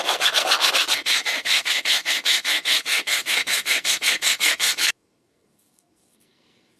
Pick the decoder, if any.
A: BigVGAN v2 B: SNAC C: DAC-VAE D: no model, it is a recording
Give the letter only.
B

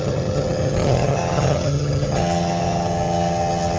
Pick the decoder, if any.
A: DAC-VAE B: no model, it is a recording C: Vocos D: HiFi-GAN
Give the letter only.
D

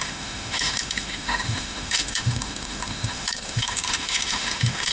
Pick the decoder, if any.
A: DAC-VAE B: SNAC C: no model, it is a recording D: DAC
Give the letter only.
A